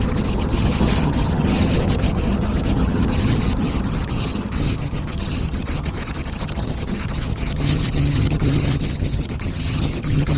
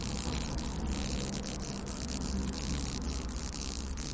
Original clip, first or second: second